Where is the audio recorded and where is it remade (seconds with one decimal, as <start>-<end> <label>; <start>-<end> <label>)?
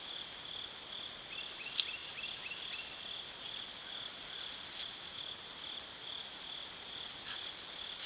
0.0-8.1 recorded